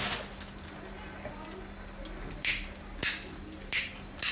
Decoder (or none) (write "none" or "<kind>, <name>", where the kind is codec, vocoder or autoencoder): none